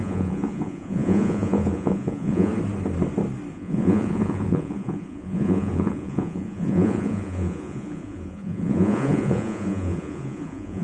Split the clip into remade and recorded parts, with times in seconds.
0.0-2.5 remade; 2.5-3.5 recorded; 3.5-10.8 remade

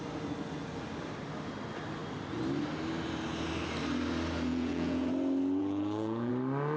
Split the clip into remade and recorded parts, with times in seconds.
0.0-4.5 recorded; 4.5-5.1 remade; 5.1-5.6 recorded; 5.6-6.3 remade; 6.3-6.8 recorded

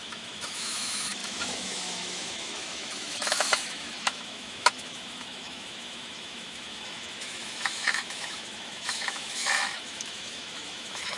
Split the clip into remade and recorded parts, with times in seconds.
0.0-11.2 remade

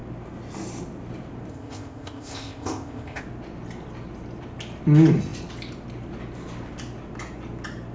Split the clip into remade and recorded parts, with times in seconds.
0.0-1.5 recorded; 1.5-3.2 remade; 3.2-7.9 recorded

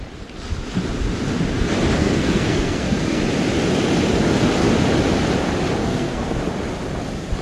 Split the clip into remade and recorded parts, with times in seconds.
0.0-2.0 recorded; 2.0-3.2 remade; 3.2-5.8 recorded; 5.8-6.4 remade; 6.4-7.4 recorded

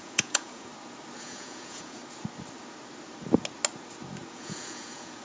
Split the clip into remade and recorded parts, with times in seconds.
0.0-0.7 remade; 0.7-1.2 recorded; 1.2-2.0 remade; 2.0-4.3 recorded; 4.3-5.2 remade